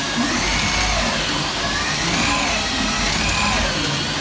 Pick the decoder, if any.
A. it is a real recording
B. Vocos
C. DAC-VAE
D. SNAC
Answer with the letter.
A